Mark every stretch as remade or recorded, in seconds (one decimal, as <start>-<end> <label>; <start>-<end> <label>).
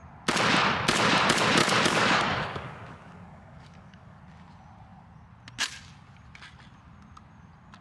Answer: 0.0-1.6 recorded; 1.6-4.2 remade; 4.2-7.8 recorded